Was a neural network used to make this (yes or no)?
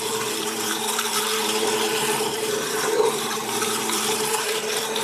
yes